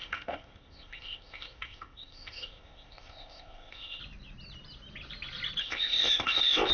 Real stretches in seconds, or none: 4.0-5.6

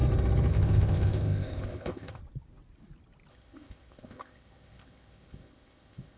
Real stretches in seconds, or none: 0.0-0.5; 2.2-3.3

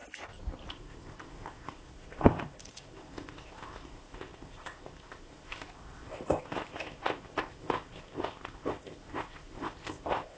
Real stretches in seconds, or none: 0.0-0.7